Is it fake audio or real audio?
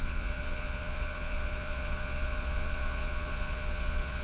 fake